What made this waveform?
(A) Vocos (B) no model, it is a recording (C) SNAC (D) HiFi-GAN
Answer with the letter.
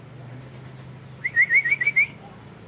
B